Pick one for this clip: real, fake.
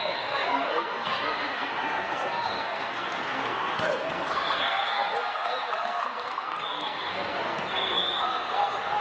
fake